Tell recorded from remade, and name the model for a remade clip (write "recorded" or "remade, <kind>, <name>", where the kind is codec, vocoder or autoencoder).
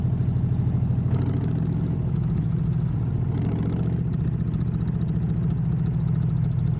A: recorded